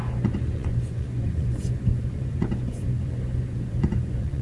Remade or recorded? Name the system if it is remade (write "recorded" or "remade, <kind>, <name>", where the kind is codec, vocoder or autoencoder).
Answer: remade, vocoder, Vocos